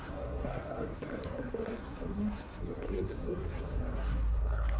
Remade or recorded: remade